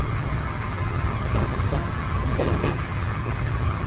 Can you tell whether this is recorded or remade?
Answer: remade